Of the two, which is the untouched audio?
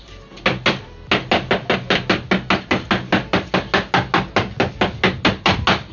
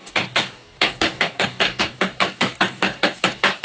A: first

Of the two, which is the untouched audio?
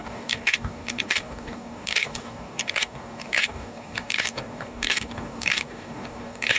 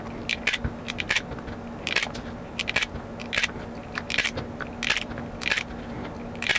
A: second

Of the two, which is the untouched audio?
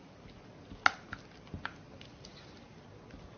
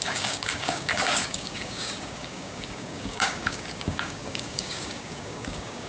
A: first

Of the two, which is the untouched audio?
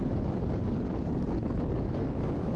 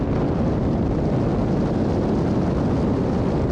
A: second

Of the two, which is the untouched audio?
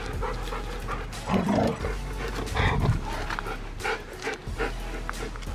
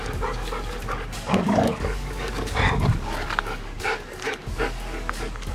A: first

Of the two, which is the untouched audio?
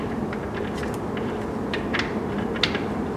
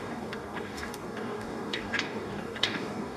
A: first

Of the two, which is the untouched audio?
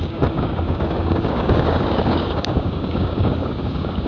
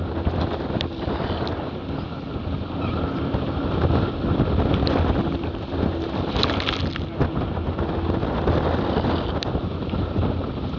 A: second